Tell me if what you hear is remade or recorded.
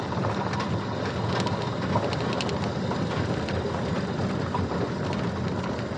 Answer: recorded